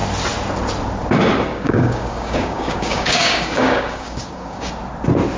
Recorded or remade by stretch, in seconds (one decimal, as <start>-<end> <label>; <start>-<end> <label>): 0.0-1.5 recorded; 1.5-4.7 remade; 4.7-5.4 recorded